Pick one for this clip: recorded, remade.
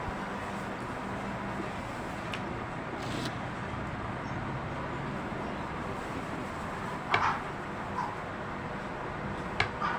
recorded